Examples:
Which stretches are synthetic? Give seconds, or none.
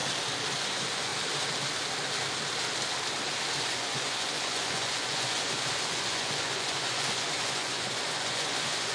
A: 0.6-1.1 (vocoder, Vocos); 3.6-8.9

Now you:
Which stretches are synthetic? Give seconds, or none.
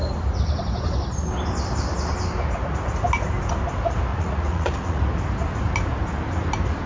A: 4.1-5.0 (vocoder, Vocos)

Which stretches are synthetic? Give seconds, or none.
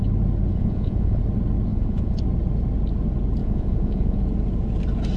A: 0.5-1.2 (vocoder, Vocos); 1.7-2.2; 3.4-4.2